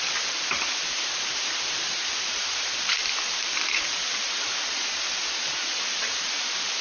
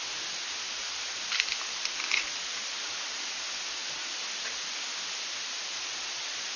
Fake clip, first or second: first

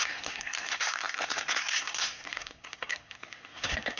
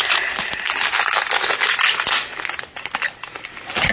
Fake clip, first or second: first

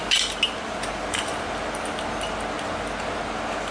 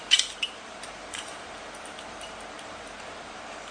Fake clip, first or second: second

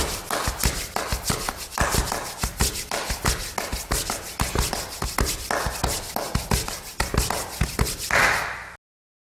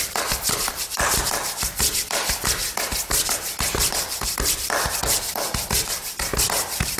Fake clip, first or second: second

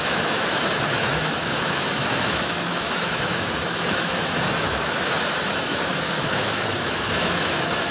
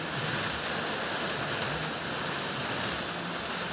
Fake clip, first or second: first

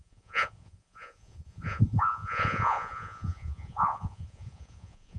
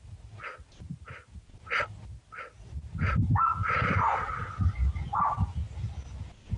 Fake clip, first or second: first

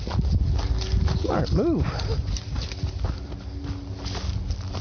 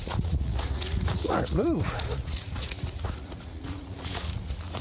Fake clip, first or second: second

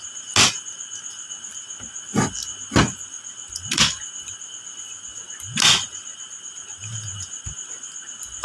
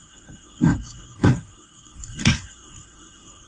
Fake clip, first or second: second